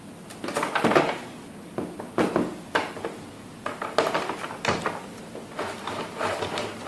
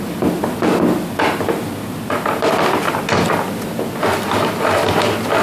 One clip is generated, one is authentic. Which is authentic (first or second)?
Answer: second